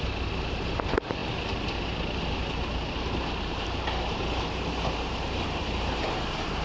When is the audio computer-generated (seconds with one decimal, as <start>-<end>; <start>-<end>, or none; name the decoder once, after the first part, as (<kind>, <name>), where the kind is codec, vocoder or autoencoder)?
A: 0.0-6.6 (vocoder, BigVGAN v2)